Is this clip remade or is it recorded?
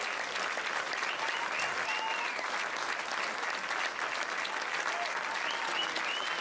recorded